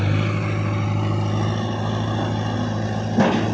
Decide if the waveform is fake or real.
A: real